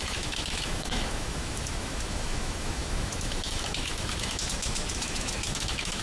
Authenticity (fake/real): fake